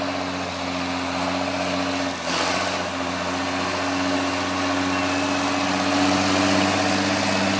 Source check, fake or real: real